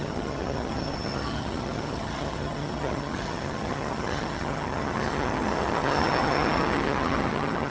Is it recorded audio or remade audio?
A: remade